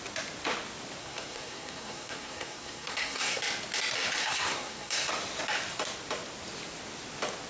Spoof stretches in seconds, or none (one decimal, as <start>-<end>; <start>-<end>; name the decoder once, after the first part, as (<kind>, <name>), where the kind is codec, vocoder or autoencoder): 1.0-3.4 (codec, SNAC); 4.2-5.1